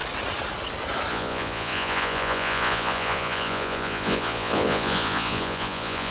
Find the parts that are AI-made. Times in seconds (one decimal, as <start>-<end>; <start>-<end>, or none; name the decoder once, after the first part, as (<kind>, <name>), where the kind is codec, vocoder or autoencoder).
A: 1.1-6.1 (vocoder, Vocos)